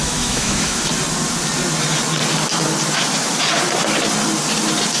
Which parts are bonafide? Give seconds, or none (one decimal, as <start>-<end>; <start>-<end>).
0.9-5.0